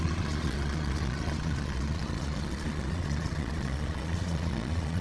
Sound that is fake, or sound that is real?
fake